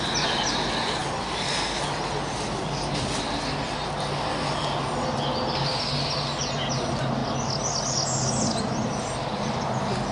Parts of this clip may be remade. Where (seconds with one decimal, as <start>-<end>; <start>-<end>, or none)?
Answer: none